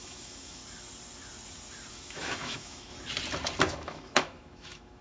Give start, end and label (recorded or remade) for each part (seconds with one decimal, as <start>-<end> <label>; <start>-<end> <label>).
0.0-0.6 remade; 0.6-1.9 recorded; 1.9-2.9 remade; 2.9-3.6 recorded; 3.6-5.0 remade